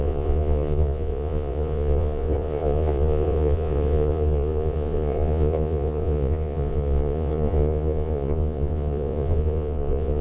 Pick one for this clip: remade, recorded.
remade